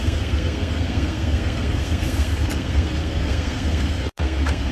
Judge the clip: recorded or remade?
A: remade